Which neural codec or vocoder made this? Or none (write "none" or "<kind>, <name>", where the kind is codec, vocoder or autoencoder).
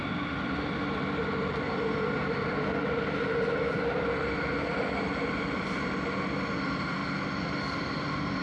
none